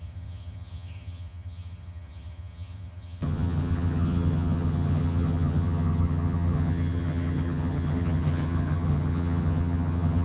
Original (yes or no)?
no